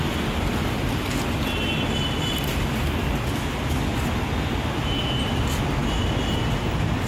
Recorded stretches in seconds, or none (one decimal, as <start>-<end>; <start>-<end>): 0.0-7.1